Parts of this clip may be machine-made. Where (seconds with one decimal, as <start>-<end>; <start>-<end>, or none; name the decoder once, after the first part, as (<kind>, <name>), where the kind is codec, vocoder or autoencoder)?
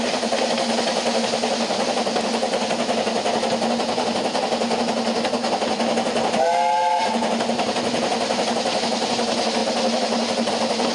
9.6-10.5 (vocoder, BigVGAN v2)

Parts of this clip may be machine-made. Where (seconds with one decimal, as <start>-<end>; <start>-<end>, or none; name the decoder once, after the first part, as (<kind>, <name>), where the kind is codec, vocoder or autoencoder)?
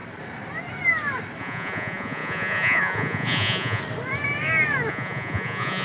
1.4-3.8 (vocoder, Vocos); 4.9-5.8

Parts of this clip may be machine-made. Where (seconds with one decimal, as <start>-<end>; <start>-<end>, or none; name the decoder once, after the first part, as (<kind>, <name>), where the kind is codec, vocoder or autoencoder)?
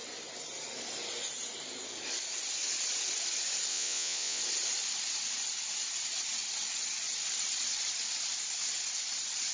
3.7-4.4 (vocoder, Vocos)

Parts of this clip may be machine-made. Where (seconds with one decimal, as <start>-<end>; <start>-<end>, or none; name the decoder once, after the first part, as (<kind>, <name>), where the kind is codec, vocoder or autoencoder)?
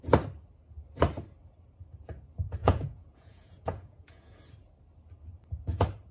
2.6-4.4 (vocoder, Vocos)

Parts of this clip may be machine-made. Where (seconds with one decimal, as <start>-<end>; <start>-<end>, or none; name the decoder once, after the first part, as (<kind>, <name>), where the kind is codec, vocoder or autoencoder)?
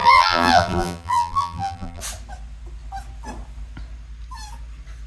0.0-2.0 (vocoder, BigVGAN v2)